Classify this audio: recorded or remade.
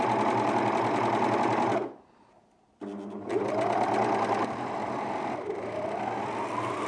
recorded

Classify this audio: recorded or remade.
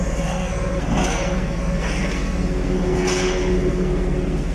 remade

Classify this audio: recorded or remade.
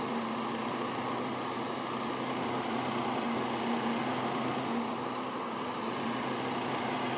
recorded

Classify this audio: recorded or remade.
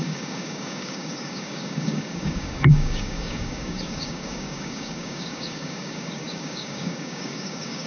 remade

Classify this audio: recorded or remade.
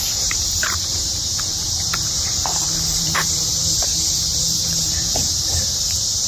remade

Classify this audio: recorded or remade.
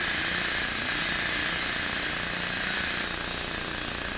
recorded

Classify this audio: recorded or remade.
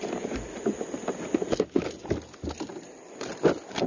recorded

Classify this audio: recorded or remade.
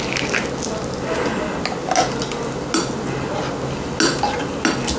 recorded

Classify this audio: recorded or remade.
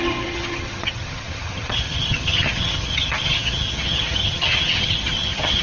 remade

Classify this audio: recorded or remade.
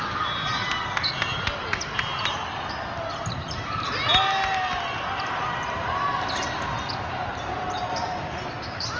recorded